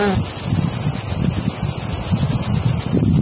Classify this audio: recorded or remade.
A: recorded